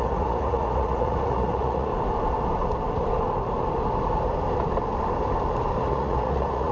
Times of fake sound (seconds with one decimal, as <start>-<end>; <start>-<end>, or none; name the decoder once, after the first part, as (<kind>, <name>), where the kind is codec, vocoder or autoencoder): 0.0-1.9 (vocoder, Vocos); 5.9-6.7